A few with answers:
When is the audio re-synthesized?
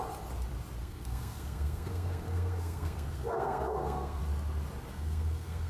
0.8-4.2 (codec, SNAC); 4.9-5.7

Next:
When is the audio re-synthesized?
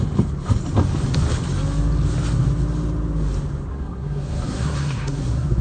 3.7-5.6 (codec, SNAC)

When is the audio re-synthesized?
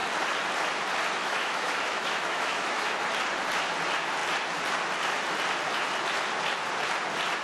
1.2-3.0 (autoencoder, DAC-VAE)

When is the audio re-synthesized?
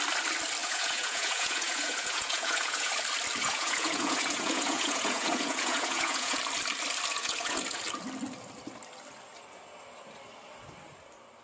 0.6-2.9 (vocoder, Vocos); 3.4-6.4; 7.1-7.8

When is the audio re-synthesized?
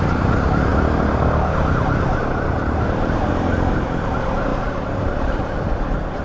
none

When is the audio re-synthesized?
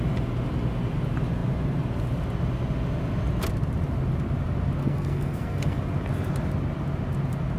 4.8-5.8 (codec, SNAC)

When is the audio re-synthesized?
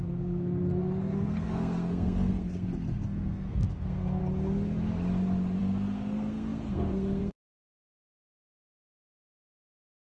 0.0-4.2 (codec, SNAC); 5.6-10.1